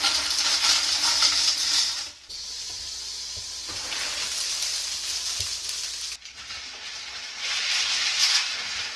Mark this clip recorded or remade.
recorded